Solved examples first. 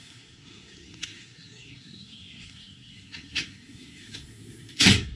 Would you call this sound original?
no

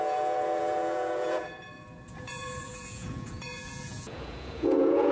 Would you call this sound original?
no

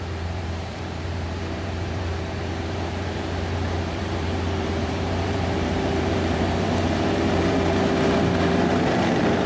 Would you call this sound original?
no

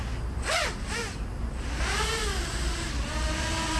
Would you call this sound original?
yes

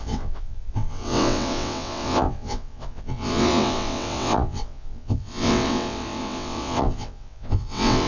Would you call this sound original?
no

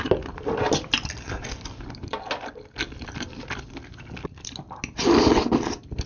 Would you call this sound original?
yes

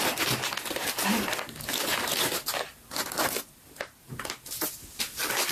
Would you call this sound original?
yes